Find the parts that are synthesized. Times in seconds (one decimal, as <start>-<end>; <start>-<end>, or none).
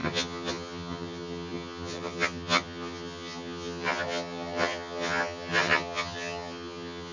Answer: 0.0-7.1